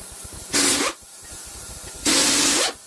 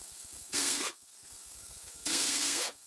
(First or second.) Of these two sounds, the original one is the first